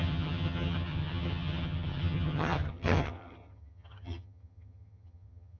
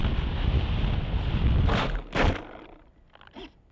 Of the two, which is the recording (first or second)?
second